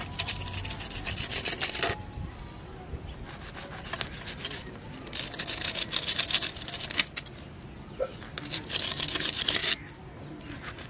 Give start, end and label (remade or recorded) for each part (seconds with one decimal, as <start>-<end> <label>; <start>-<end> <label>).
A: 0.0-10.9 recorded